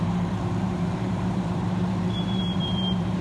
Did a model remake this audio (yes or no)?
yes